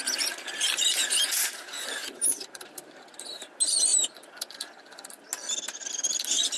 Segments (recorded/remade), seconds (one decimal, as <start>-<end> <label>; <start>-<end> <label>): 0.0-2.0 recorded; 2.0-2.9 remade; 2.9-3.9 recorded; 3.9-4.6 remade; 4.6-6.6 recorded